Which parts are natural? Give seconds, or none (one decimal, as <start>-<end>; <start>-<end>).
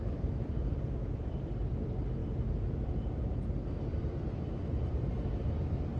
none